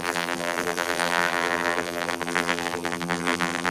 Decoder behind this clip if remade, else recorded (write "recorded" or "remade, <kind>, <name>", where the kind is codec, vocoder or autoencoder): remade, vocoder, BigVGAN v2